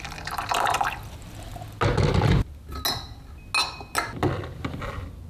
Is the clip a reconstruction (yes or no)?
no